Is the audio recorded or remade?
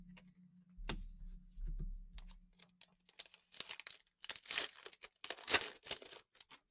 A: recorded